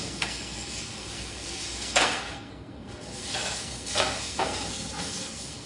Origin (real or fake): fake